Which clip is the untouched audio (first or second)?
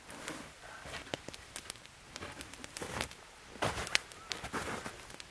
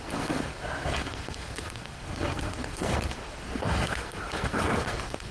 first